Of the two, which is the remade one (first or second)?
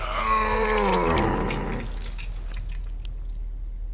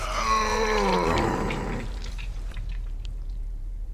second